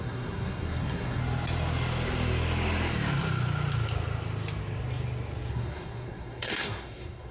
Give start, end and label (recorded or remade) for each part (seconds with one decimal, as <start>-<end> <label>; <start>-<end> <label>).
0.0-1.2 remade; 1.2-5.5 recorded; 5.5-7.3 remade